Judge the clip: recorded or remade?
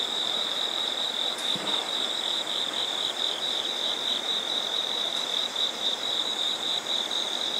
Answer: remade